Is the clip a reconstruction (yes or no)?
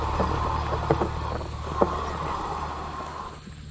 no